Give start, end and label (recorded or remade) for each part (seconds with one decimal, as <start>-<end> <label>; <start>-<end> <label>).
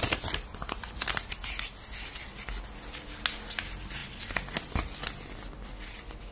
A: 0.0-6.3 recorded